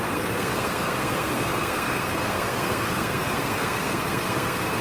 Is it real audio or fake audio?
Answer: fake